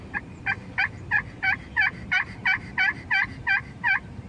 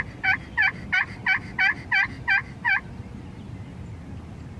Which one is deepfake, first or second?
first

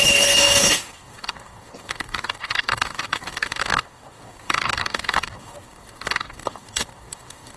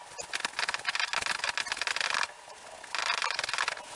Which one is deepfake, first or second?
first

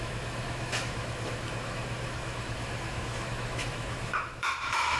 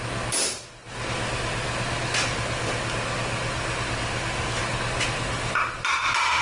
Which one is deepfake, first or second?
first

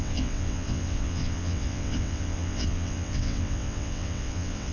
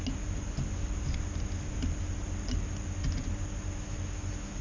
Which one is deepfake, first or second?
first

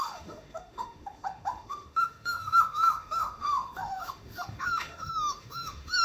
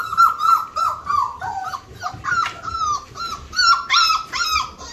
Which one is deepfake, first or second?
first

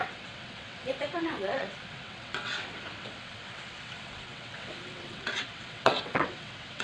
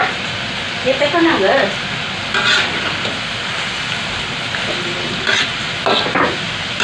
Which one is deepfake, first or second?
first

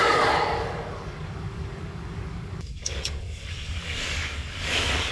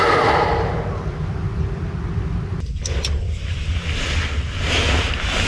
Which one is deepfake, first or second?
first